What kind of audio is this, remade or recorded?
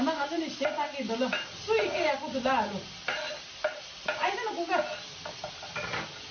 recorded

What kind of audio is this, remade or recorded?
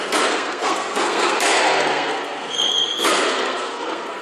remade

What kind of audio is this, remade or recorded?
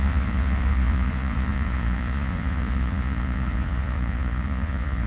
remade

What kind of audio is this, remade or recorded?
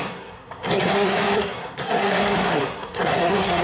remade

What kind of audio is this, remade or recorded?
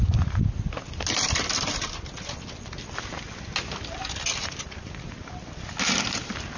recorded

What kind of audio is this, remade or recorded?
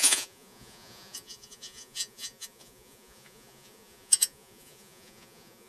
remade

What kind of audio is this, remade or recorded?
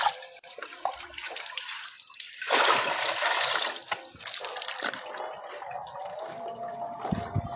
recorded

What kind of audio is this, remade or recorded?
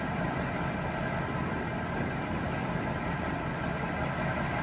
recorded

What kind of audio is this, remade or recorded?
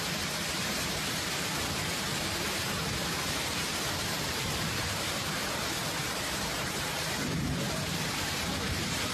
remade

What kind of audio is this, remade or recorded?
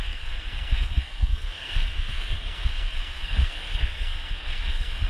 remade